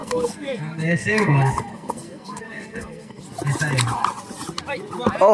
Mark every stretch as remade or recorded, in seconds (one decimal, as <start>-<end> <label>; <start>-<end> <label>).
0.0-3.2 remade; 3.2-5.3 recorded

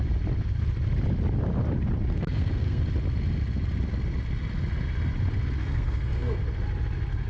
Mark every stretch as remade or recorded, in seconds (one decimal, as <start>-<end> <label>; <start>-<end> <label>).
0.0-2.1 recorded; 2.1-2.8 remade; 2.8-5.6 recorded; 5.6-6.4 remade; 6.4-7.3 recorded

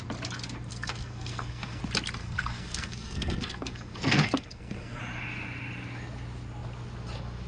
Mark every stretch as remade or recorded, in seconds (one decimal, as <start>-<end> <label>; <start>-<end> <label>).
0.0-0.7 recorded; 0.7-1.8 remade; 1.8-2.2 recorded; 2.2-5.0 remade; 5.0-7.5 recorded

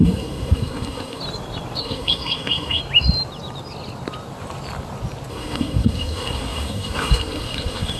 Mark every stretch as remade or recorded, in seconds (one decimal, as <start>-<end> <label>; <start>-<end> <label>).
0.0-1.2 remade; 1.2-1.8 recorded; 1.8-2.8 remade; 2.8-5.3 recorded; 5.3-8.0 remade